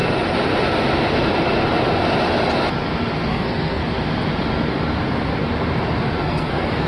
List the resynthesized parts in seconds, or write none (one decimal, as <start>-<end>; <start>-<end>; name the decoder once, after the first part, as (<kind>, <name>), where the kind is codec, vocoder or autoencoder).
3.3-3.8 (codec, SNAC); 6.2-6.9